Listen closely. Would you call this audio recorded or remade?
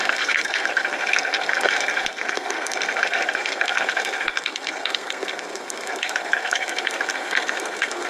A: remade